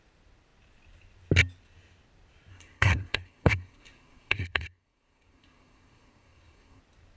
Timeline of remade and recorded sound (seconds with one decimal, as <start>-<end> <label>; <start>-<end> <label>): 0.0-2.5 recorded; 2.5-6.8 remade; 6.8-7.2 recorded

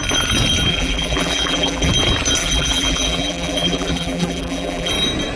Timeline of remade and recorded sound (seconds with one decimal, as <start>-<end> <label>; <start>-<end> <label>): 0.0-0.7 recorded; 0.7-1.9 remade; 1.9-2.4 recorded; 2.4-4.9 remade; 4.9-5.4 recorded

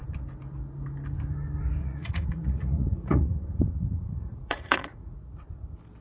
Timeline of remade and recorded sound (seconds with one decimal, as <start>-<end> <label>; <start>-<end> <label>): 0.0-1.8 recorded; 1.8-5.4 remade; 5.4-6.0 recorded

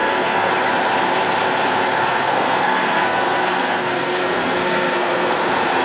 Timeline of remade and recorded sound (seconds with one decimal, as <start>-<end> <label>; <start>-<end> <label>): 0.0-0.5 remade; 0.5-2.0 recorded; 2.0-5.8 remade